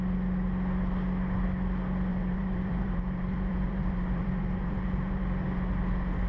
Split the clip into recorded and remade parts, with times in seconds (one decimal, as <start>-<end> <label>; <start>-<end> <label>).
0.0-2.1 recorded; 2.1-5.2 remade; 5.2-6.3 recorded